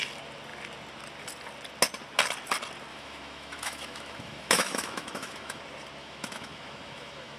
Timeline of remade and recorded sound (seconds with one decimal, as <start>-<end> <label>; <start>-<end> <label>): 0.0-2.9 recorded; 2.9-5.6 remade; 5.6-6.0 recorded; 6.0-7.4 remade